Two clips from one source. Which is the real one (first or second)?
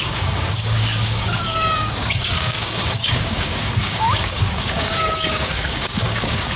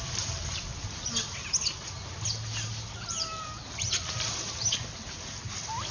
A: second